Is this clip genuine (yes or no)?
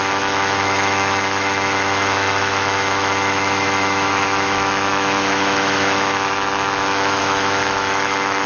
no